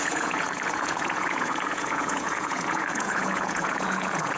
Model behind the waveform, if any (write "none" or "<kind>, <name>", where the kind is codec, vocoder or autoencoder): vocoder, Vocos